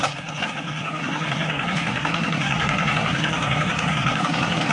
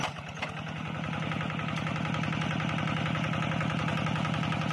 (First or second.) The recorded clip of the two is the second